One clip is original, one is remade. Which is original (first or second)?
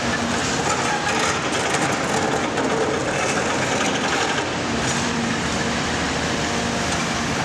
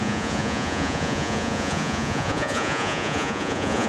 first